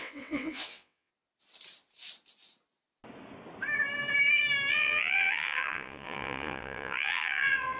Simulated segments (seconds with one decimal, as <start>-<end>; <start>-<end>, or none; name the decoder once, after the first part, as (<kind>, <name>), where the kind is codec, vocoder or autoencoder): 0.0-1.1 (vocoder, WaveNeXt); 4.7-7.8